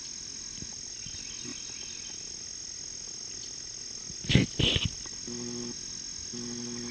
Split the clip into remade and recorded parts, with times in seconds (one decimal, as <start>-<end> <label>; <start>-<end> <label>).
0.0-6.9 recorded